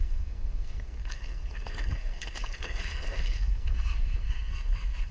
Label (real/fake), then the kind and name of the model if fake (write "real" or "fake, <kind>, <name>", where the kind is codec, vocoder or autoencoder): fake, codec, SNAC